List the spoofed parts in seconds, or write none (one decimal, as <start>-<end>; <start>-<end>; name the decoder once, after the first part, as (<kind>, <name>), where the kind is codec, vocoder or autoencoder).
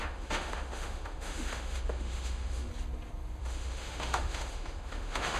0.0-2.7 (autoencoder, DAC-VAE); 3.4-5.4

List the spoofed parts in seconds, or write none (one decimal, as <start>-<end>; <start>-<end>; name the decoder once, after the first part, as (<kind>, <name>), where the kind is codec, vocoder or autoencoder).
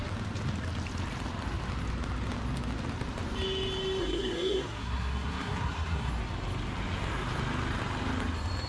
4.0-6.1 (codec, SNAC)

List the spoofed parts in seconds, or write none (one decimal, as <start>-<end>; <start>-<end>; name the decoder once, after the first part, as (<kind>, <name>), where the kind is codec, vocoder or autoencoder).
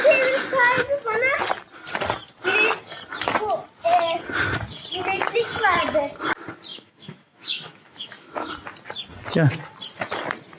6.7-8.5 (autoencoder, DAC-VAE)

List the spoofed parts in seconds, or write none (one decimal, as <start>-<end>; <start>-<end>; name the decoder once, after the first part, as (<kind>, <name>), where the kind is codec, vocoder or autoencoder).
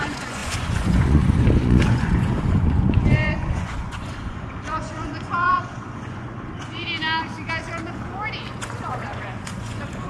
0.0-6.8 (vocoder, Vocos); 8.5-10.1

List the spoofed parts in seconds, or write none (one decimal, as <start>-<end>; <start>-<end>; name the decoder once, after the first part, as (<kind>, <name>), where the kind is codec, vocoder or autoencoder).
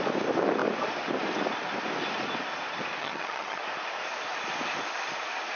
3.0-3.6 (vocoder, HiFi-GAN)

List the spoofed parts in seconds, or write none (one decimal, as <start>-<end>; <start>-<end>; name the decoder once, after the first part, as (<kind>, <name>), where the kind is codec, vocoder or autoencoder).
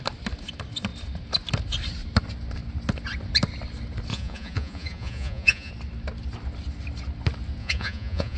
4.1-5.7 (vocoder, Vocos); 7.6-8.4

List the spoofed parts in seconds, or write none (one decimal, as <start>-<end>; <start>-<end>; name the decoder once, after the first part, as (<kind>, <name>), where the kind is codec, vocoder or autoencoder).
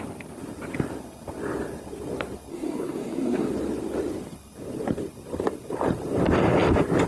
2.5-3.5 (codec, SNAC)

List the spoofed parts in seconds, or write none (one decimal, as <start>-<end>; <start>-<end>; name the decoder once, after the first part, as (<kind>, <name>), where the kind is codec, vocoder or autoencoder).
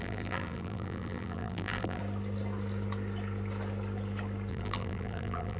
0.0-2.0 (vocoder, BigVGAN v2); 4.5-5.6